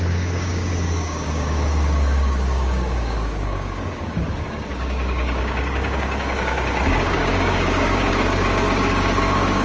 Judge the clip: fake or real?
fake